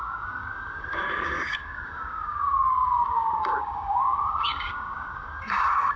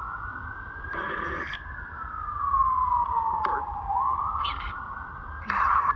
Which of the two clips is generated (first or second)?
first